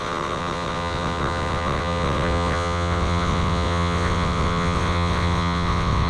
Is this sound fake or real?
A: fake